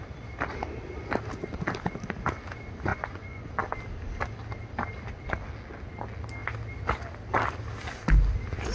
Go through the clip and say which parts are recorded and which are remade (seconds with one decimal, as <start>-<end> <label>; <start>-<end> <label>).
0.0-2.9 recorded; 2.9-3.5 remade; 3.5-8.7 recorded